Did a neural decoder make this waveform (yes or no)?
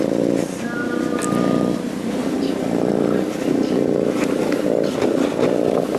no